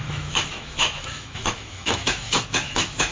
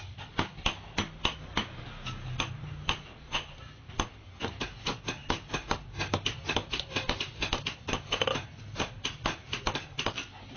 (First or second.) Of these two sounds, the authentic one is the second